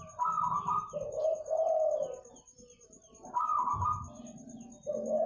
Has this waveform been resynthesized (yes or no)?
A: no